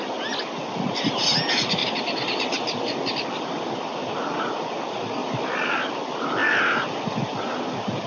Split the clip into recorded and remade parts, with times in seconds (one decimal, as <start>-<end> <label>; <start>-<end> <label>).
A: 0.0-1.8 recorded; 1.8-3.7 remade; 3.7-5.2 recorded; 5.2-5.7 remade; 5.7-6.4 recorded; 6.4-7.6 remade; 7.6-8.1 recorded